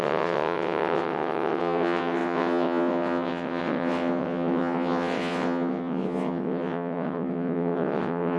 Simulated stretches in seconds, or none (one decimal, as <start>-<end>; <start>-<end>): 0.0-8.4